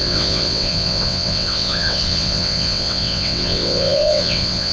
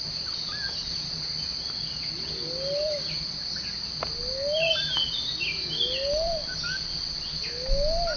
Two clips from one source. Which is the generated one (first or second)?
first